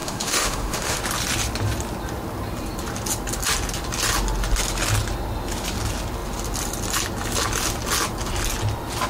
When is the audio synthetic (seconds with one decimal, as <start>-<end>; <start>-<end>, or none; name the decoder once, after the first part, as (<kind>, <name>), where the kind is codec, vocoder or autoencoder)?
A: 0.0-1.0 (autoencoder, DAC-VAE)